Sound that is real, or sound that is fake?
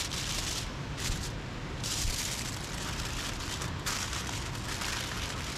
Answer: real